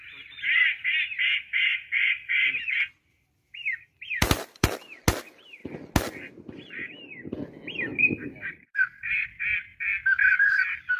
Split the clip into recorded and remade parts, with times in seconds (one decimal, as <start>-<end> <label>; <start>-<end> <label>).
0.0-1.7 recorded; 1.7-5.0 remade; 5.0-7.9 recorded; 7.9-9.4 remade; 9.4-11.0 recorded